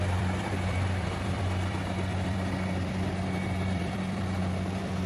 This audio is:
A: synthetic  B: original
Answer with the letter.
A